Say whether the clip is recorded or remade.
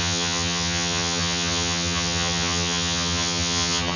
remade